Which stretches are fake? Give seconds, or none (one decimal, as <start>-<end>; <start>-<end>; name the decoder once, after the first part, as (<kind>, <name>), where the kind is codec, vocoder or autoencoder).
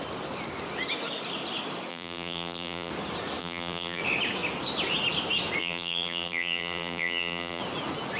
1.9-2.9 (vocoder, BigVGAN v2); 3.4-4.0; 5.6-7.6